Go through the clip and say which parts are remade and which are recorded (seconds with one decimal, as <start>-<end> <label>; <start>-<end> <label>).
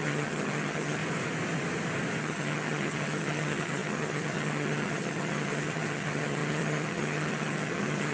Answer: 0.0-1.0 remade; 1.0-2.2 recorded; 2.2-8.1 remade